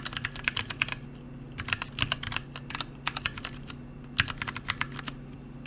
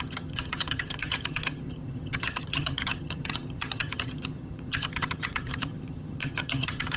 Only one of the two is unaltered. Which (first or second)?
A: first